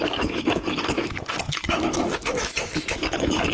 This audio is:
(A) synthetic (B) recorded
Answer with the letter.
A